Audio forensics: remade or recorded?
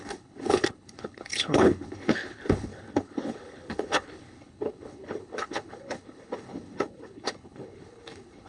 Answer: remade